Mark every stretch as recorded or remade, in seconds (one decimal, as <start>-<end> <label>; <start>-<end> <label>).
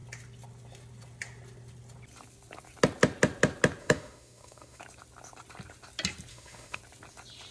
0.0-3.8 recorded; 3.8-4.8 remade; 4.8-6.3 recorded; 6.3-6.8 remade; 6.8-7.5 recorded